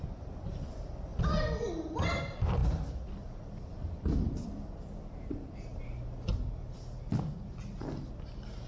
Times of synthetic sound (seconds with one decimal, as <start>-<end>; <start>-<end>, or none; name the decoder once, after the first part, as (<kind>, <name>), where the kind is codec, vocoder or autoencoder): 2.6-5.8 (vocoder, BigVGAN v2)